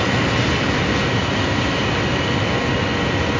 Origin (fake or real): real